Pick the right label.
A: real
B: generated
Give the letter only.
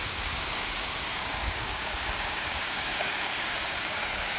B